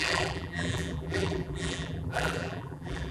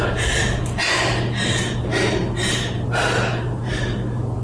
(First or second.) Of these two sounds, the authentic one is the second